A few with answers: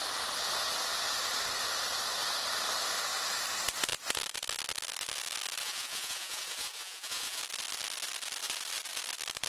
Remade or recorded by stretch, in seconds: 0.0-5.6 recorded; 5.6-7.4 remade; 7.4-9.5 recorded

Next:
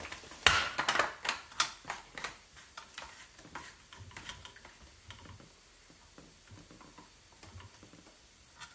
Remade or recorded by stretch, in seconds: 0.0-0.4 remade; 0.4-1.7 recorded; 1.7-4.3 remade; 4.3-7.7 recorded; 7.7-8.7 remade

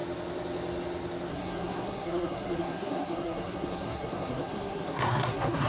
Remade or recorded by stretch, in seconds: 0.0-1.3 recorded; 1.3-5.7 remade